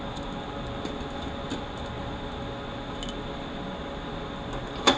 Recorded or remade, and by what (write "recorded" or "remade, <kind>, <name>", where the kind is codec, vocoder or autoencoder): recorded